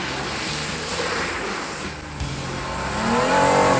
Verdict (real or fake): real